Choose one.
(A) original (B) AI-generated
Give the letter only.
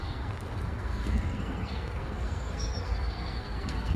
B